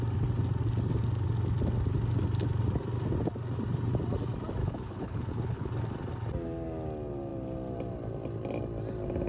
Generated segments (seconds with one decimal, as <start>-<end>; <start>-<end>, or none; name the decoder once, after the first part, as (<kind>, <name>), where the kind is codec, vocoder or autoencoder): 4.6-5.7 (codec, HILCodec)